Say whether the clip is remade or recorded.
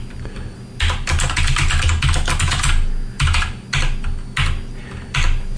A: recorded